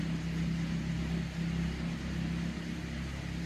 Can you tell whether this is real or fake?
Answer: real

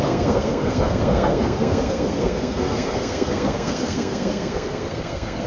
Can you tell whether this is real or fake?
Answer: fake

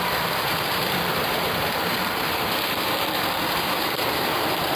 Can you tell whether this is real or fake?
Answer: fake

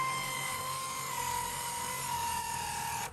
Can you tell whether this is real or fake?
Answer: fake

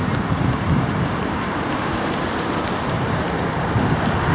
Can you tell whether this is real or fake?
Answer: fake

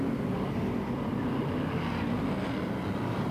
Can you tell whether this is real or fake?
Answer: real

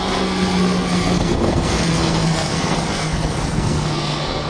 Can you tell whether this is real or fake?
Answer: fake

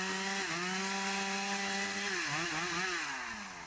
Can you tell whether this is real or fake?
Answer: real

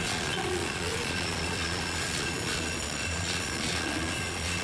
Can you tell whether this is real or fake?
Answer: fake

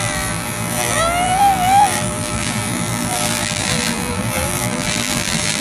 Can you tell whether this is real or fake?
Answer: fake